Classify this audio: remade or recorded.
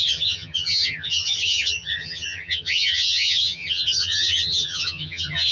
remade